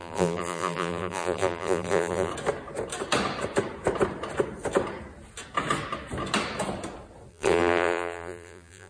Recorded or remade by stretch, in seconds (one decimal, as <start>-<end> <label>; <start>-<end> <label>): 0.0-2.3 remade; 2.3-7.3 recorded; 7.3-8.9 remade